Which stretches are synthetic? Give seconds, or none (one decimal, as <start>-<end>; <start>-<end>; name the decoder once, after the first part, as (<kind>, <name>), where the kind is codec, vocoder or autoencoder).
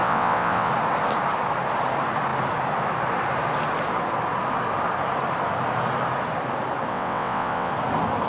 0.0-0.7 (vocoder, WaveNeXt); 6.9-7.7